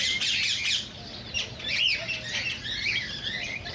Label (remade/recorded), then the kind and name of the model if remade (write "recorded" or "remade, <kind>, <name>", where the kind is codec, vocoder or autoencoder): recorded